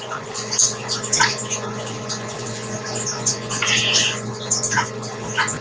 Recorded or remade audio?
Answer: remade